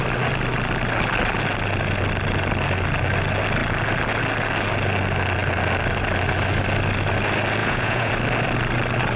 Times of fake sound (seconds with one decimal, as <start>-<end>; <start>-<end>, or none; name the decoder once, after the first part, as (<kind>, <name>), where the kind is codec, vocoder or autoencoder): 7.6-8.1 (vocoder, Vocos)